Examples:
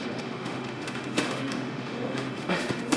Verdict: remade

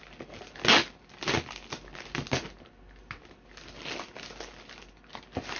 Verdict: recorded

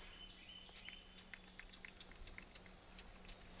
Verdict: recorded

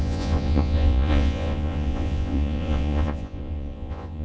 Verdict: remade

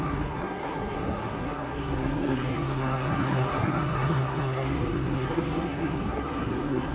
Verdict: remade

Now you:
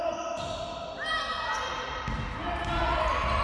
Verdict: recorded